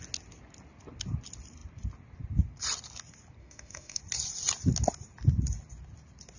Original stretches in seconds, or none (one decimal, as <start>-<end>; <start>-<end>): 0.0-3.4; 4.0-6.4